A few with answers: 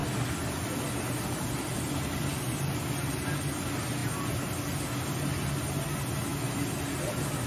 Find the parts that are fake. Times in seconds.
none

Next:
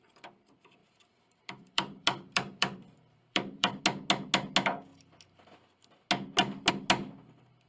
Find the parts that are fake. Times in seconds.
0.8-3.8 (vocoder, BigVGAN v2)